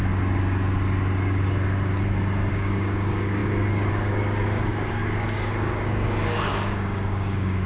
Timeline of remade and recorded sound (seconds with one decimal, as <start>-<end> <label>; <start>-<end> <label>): 0.0-2.5 recorded; 2.5-7.7 remade